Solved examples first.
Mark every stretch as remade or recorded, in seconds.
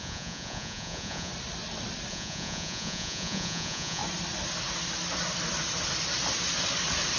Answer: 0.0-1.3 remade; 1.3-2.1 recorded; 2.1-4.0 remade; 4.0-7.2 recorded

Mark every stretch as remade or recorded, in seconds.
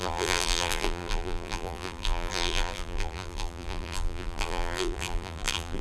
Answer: 0.0-5.8 remade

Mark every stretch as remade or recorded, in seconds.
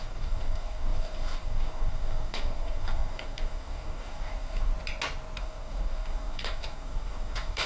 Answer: 0.0-4.7 remade; 4.7-5.4 recorded; 5.4-7.7 remade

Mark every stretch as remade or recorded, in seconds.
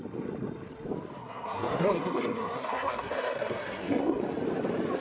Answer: 0.0-1.2 recorded; 1.2-4.2 remade; 4.2-5.0 recorded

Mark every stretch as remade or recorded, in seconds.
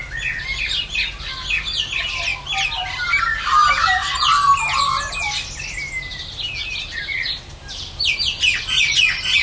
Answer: 0.0-9.4 recorded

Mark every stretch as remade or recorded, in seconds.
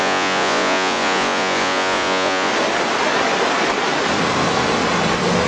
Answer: 0.0-2.5 remade; 2.5-5.5 recorded